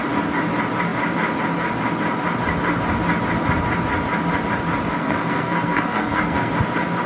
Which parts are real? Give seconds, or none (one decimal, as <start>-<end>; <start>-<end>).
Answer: 0.0-4.9; 6.5-7.1